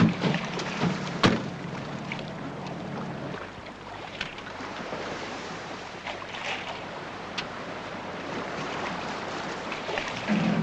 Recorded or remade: remade